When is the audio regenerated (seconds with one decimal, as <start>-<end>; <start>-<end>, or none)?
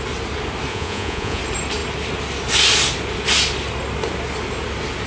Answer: 0.7-1.4